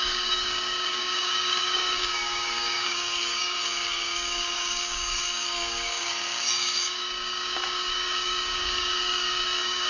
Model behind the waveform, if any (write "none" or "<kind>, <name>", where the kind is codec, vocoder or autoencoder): codec, DAC